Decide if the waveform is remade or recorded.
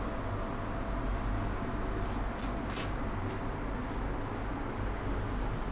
recorded